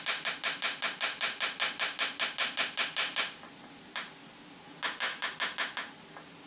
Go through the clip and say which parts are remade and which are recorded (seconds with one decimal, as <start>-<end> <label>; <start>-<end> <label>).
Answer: 0.0-6.5 recorded

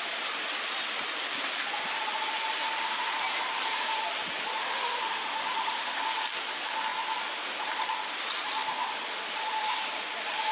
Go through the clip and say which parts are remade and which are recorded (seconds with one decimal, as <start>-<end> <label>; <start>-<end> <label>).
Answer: 0.0-4.6 recorded; 4.6-6.0 remade; 6.0-10.5 recorded

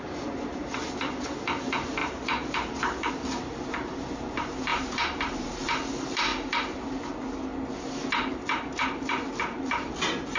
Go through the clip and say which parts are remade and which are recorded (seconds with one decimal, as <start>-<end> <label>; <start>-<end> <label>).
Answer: 0.0-6.3 remade; 6.3-7.9 recorded; 7.9-10.4 remade

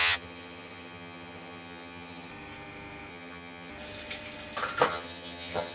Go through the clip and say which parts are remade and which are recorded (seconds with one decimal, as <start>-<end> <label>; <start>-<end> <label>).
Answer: 0.0-2.3 remade; 2.3-3.1 recorded; 3.1-3.7 remade; 3.7-4.9 recorded; 4.9-5.7 remade

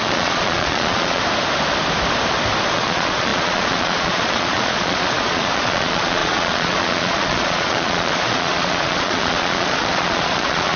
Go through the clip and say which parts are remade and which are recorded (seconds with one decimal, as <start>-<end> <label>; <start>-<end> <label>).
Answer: 0.0-1.2 remade; 1.2-2.7 recorded; 2.7-10.8 remade

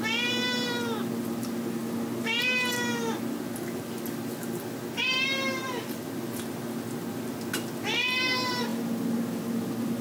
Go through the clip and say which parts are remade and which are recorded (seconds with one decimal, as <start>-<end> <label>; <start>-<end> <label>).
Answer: 0.0-10.0 recorded

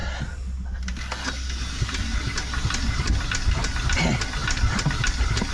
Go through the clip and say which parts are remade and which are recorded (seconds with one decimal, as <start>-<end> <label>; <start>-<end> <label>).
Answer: 0.0-5.5 recorded

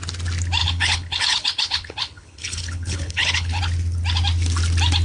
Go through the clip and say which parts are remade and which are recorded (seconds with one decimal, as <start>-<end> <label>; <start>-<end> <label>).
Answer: 0.0-0.6 recorded; 0.6-3.6 remade; 3.6-5.0 recorded